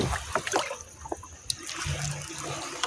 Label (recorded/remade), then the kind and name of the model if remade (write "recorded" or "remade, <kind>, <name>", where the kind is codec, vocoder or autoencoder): recorded